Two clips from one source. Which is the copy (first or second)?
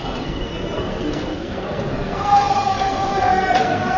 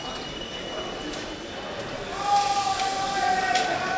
first